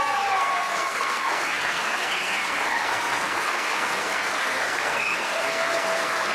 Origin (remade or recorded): remade